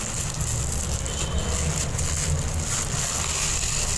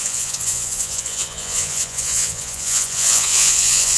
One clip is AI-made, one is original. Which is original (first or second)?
first